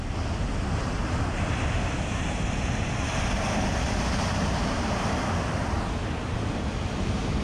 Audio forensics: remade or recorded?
recorded